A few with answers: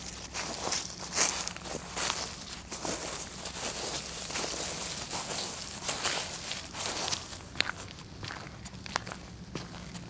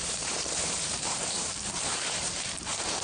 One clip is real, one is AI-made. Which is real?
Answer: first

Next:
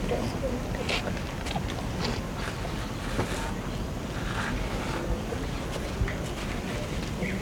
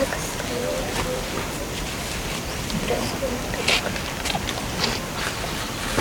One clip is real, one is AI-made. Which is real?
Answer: first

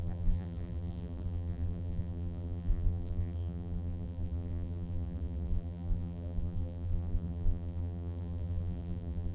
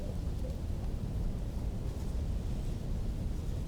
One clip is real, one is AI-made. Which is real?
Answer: second